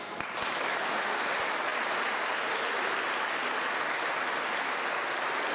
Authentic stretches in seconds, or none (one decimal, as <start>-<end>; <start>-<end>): 0.0-5.5